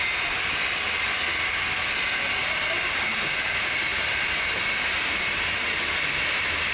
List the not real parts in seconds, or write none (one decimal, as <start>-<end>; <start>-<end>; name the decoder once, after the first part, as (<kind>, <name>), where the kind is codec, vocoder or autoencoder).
2.4-3.1 (vocoder, BigVGAN v2); 3.9-6.7